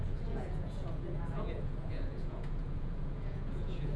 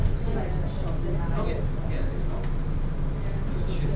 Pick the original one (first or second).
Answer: second